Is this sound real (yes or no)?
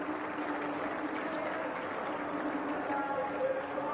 yes